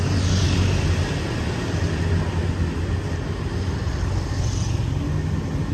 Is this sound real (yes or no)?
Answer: yes